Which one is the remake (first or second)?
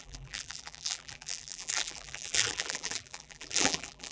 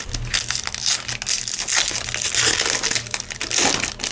first